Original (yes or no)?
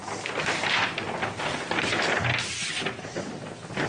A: yes